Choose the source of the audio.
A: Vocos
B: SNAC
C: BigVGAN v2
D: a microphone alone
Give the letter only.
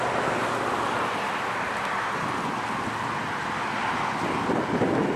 D